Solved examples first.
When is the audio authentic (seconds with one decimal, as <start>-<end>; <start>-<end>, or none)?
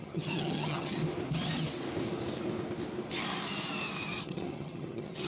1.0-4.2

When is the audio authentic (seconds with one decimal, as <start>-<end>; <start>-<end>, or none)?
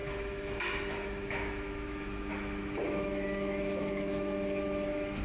none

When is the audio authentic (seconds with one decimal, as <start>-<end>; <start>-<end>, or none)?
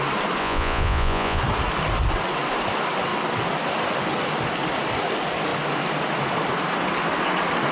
0.0-0.4; 1.4-7.7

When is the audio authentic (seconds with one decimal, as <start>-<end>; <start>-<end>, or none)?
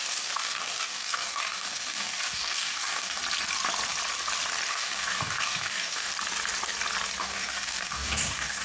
3.2-4.7; 6.1-7.2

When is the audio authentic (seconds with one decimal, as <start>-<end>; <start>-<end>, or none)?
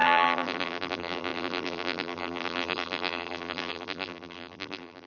none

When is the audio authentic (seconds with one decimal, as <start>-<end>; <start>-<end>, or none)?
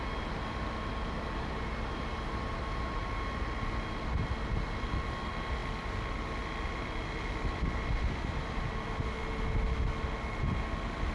0.0-11.1